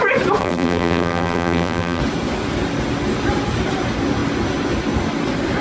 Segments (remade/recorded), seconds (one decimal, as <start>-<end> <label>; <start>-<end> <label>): 0.0-0.4 recorded; 0.4-2.0 remade; 2.0-5.6 recorded